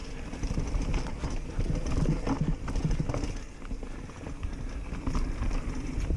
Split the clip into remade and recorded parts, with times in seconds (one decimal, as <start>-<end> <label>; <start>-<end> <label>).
0.0-6.2 recorded